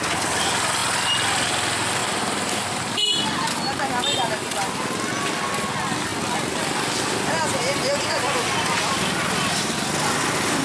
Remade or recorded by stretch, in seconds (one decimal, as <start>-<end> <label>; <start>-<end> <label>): 0.0-10.6 recorded